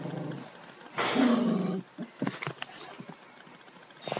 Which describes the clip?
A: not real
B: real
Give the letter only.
B